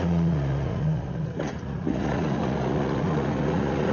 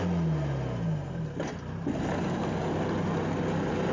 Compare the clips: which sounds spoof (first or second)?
first